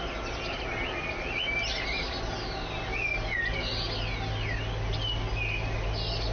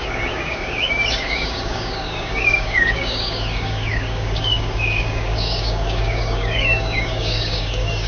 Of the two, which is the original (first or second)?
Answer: first